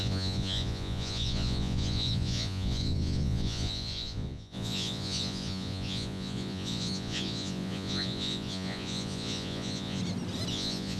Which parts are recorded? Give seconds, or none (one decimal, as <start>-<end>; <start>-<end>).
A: 10.0-10.5